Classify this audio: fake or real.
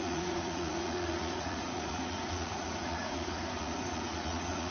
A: fake